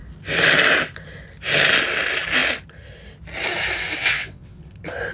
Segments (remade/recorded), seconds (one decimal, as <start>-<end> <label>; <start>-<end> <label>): 0.0-4.0 recorded; 4.0-4.6 remade; 4.6-5.1 recorded

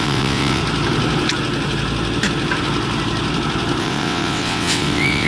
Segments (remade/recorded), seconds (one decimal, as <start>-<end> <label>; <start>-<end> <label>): 0.0-0.6 remade; 0.6-3.8 recorded; 3.8-5.3 remade

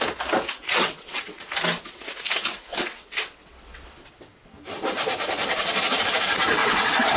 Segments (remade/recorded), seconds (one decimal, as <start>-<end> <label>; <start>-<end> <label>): 0.0-0.6 recorded; 0.6-1.4 remade; 1.4-2.7 recorded; 2.7-4.5 remade; 4.5-6.6 recorded; 6.6-7.2 remade